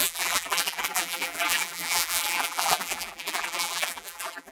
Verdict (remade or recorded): remade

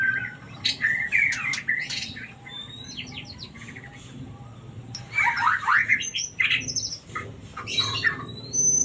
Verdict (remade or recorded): remade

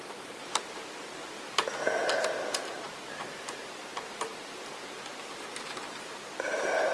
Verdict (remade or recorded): remade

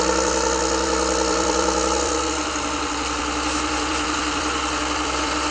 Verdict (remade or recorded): remade